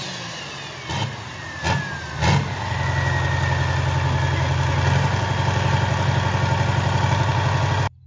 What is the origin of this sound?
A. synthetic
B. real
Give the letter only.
B